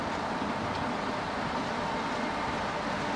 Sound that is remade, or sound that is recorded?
recorded